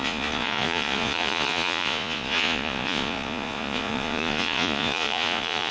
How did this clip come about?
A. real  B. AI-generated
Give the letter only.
B